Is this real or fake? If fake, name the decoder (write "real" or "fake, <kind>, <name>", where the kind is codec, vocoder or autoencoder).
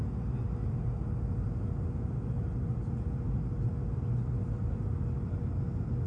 real